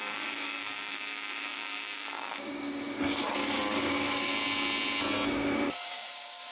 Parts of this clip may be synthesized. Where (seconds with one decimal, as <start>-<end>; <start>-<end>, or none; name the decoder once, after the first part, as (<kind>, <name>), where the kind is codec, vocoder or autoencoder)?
0.0-4.3 (codec, DAC); 5.3-6.5